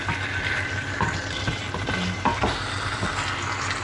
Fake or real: real